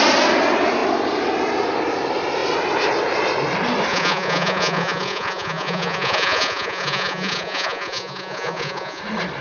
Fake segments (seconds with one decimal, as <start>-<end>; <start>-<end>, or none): 3.9-9.0